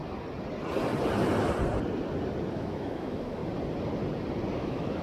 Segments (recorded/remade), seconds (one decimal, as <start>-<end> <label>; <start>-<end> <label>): 0.0-2.5 recorded; 2.5-3.4 remade; 3.4-4.6 recorded; 4.6-5.0 remade